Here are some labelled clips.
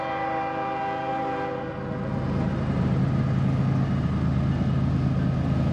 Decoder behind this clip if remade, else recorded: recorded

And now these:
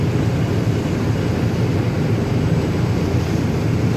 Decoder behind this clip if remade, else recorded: recorded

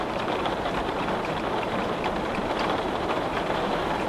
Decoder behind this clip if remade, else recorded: remade, vocoder, BigVGAN v2